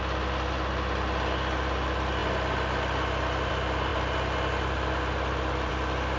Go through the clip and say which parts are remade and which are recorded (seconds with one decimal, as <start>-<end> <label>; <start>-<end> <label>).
0.0-6.2 recorded